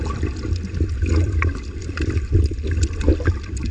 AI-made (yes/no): no